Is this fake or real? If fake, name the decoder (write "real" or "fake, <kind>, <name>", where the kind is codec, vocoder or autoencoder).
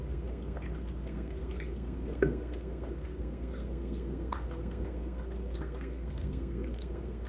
fake, codec, SNAC